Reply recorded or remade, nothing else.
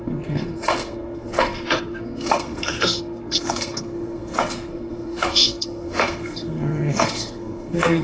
remade